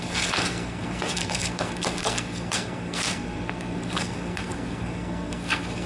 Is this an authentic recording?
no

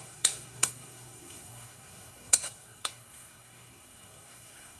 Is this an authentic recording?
no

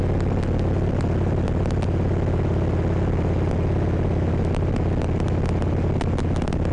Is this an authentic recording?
yes